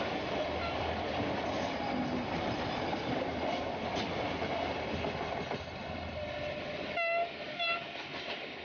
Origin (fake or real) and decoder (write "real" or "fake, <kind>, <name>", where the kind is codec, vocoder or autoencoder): real